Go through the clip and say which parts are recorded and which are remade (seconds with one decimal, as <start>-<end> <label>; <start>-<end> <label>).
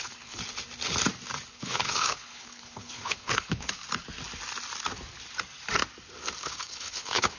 0.0-0.4 remade; 0.4-1.5 recorded; 1.5-3.8 remade; 3.8-6.4 recorded; 6.4-7.4 remade